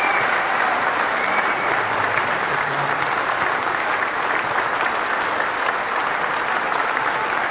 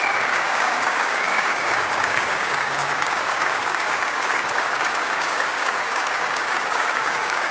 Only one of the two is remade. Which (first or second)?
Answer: second